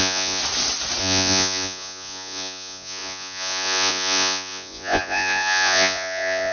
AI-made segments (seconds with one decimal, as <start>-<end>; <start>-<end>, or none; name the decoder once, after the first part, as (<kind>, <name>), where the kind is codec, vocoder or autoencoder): 0.0-0.4 (vocoder, Vocos); 1.0-6.5